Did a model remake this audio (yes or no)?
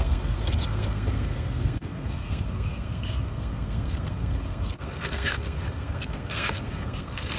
yes